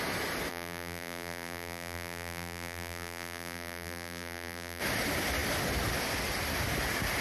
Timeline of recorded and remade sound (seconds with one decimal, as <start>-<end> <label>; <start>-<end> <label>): 0.0-0.5 recorded; 0.5-4.8 remade; 4.8-7.2 recorded